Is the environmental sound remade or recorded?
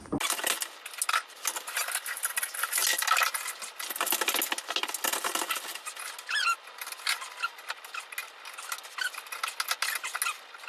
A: recorded